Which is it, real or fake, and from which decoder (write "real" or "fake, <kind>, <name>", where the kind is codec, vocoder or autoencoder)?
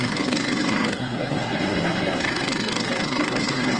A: fake, codec, SNAC